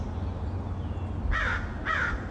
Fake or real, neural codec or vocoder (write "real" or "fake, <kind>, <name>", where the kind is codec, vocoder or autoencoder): real